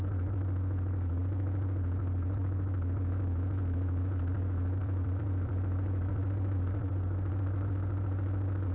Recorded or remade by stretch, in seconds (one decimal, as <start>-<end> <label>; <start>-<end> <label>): 0.0-4.8 recorded; 4.8-7.3 remade; 7.3-8.7 recorded